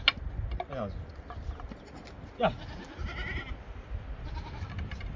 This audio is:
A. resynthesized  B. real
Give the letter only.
B